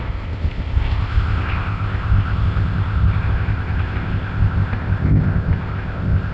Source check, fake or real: fake